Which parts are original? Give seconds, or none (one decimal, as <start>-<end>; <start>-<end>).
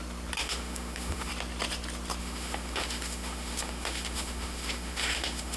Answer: 0.0-0.4; 1.3-2.2